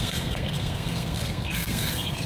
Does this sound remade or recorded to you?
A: remade